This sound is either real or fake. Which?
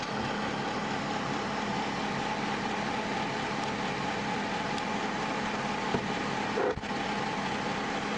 real